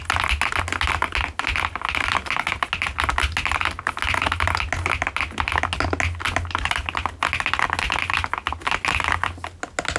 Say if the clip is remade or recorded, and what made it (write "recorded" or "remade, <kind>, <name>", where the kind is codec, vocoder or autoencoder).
recorded